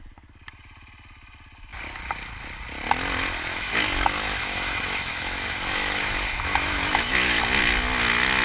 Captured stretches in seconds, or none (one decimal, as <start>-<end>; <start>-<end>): 0.0-3.5; 7.4-8.4